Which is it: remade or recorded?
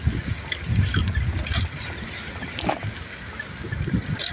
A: recorded